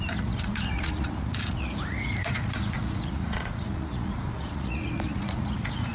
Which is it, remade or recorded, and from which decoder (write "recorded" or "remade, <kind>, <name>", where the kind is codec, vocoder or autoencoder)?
remade, vocoder, Vocos